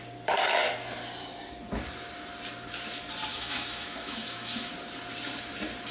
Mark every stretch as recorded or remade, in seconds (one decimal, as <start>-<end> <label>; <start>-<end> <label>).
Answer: 0.0-3.3 recorded; 3.3-4.7 remade; 4.7-5.9 recorded